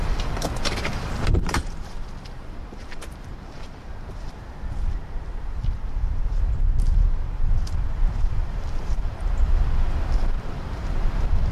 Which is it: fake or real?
fake